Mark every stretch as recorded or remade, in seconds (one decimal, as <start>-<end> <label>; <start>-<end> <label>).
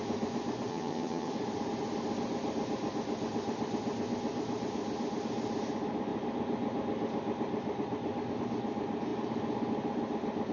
0.0-0.7 recorded; 0.7-1.3 remade; 1.3-10.5 recorded